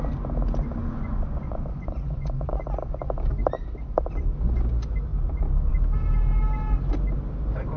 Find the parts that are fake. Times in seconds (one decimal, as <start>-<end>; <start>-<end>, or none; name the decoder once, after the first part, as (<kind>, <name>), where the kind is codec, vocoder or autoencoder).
0.8-2.6 (vocoder, Vocos)

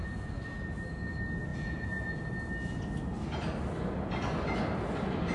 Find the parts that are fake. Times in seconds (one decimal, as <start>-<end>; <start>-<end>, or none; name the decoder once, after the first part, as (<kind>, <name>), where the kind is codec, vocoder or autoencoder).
1.5-2.2 (vocoder, Vocos)

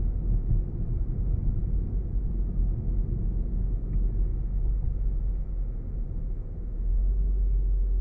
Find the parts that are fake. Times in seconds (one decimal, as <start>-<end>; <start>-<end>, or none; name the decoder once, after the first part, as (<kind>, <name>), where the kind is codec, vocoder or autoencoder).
1.6-2.3 (vocoder, Vocos); 4.3-7.1

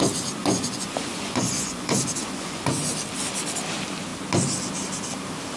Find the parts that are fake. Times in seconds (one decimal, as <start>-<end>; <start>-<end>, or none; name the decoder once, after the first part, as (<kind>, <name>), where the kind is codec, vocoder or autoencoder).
0.4-2.9 (vocoder, Vocos)

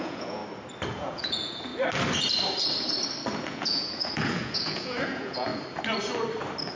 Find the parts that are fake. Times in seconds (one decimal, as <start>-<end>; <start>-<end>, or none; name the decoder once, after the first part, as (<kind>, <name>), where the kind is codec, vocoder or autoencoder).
0.0-0.4 (vocoder, Vocos); 0.9-1.7; 3.4-5.5

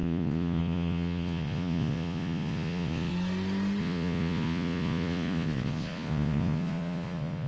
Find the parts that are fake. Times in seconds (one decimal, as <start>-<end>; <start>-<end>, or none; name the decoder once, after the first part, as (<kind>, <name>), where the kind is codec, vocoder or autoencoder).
0.0-3.1 (vocoder, Vocos); 3.8-7.5

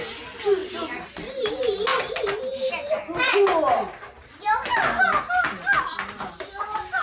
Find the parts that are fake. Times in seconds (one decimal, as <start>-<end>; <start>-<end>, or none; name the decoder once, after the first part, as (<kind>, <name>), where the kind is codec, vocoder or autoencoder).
none